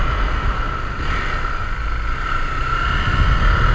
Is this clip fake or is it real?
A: real